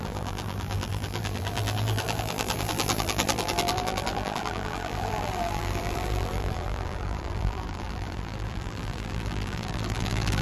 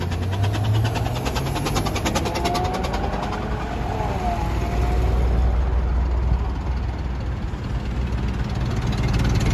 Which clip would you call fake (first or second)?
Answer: first